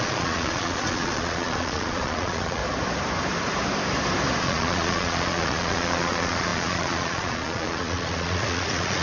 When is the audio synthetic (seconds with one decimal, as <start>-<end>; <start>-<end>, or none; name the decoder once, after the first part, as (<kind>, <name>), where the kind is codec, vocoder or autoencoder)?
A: 0.0-2.6 (vocoder, Vocos); 4.4-9.0

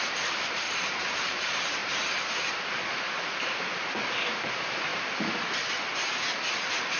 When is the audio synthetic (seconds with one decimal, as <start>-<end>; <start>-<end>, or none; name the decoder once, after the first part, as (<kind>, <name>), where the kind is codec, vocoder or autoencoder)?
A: 0.0-1.8 (vocoder, BigVGAN v2); 4.5-4.9; 6.6-7.0

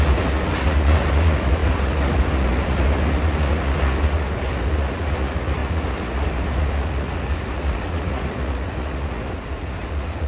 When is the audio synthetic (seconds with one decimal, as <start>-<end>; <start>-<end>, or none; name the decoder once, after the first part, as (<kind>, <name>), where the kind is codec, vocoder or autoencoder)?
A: 0.0-10.3 (vocoder, Vocos)

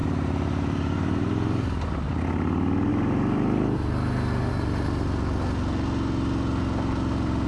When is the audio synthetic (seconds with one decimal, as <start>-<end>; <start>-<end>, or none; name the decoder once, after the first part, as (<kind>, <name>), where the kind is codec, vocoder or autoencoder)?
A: 0.0-2.0 (vocoder, BigVGAN v2); 2.9-4.5

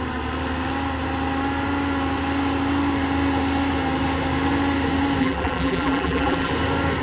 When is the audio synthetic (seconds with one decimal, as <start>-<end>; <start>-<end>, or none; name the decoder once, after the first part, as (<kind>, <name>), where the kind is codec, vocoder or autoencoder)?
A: 5.2-6.5 (vocoder, BigVGAN v2)

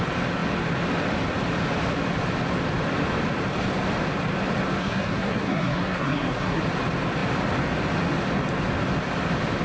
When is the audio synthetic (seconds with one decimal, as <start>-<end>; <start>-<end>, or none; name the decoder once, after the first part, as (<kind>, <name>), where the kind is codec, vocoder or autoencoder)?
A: 4.8-6.6 (codec, SNAC)

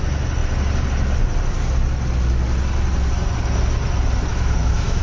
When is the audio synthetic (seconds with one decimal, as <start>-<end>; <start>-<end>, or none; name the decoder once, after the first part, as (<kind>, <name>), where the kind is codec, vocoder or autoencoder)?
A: 4.3-5.0 (autoencoder, DAC-VAE)